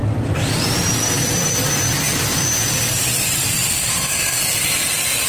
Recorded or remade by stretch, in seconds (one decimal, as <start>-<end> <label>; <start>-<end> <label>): 0.0-3.8 recorded; 3.8-4.4 remade; 4.4-5.3 recorded